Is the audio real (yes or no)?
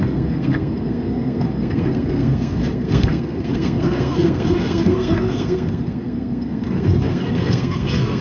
no